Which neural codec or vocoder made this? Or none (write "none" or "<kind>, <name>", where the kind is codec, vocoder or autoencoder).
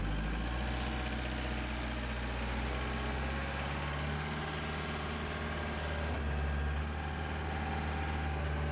none